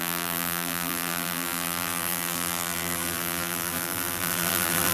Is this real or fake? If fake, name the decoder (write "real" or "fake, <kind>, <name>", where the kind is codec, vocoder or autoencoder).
fake, vocoder, BigVGAN v2